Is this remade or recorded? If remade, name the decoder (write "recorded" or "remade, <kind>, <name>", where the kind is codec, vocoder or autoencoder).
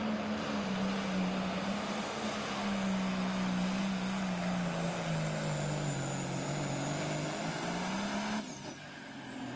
recorded